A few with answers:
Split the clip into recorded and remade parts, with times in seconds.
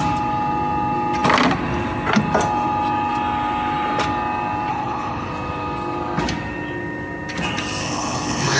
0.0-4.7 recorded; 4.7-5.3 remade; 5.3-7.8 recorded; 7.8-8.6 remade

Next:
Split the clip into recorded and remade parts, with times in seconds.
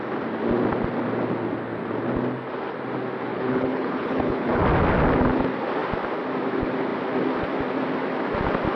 0.0-3.3 recorded; 3.3-4.6 remade; 4.6-8.8 recorded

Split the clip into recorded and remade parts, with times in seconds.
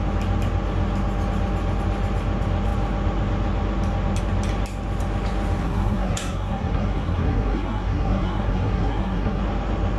0.0-5.6 recorded; 5.6-9.4 remade; 9.4-10.0 recorded